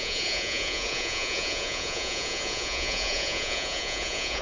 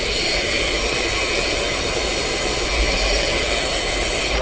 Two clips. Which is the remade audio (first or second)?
first